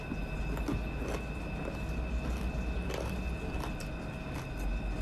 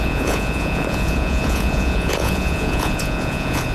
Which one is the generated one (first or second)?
second